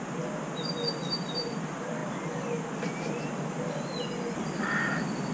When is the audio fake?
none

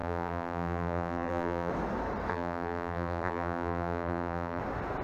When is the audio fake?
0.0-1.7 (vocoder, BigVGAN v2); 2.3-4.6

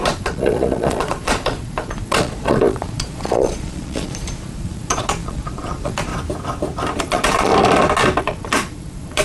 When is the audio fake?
0.0-6.1 (vocoder, Vocos); 7.0-7.5; 8.2-9.2